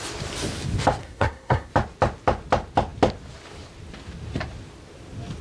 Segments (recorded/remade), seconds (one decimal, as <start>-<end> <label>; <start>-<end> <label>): 0.0-1.0 recorded; 1.0-1.7 remade; 1.7-5.4 recorded